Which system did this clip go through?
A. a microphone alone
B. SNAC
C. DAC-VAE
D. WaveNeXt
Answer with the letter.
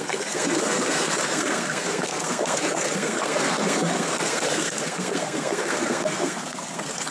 B